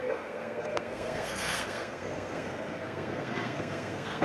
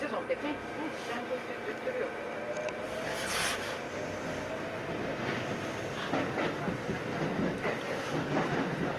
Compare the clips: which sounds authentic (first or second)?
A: second